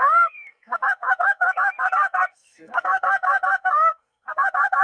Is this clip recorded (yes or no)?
no